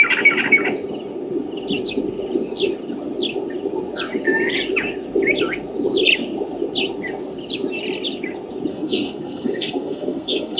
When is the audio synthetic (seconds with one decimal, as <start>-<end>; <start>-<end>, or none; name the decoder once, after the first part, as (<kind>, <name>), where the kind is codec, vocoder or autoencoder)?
8.7-10.6 (codec, SNAC)